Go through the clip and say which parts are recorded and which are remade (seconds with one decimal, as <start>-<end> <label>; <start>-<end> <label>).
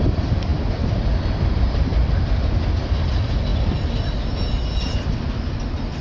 0.0-6.0 recorded